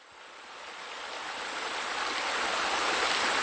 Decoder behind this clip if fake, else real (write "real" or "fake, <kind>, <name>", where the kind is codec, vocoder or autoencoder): real